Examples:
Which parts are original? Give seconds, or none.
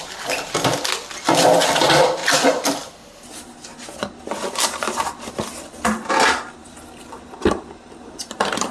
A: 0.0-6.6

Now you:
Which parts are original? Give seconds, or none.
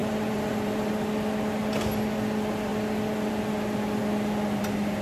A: 0.9-5.0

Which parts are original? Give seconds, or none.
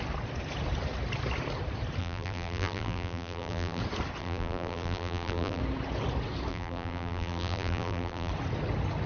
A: 0.0-2.0; 3.8-4.2; 5.6-6.5; 8.3-9.1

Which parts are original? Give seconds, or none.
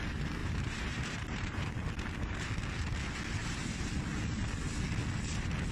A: 0.0-0.4; 1.7-3.4; 3.9-5.7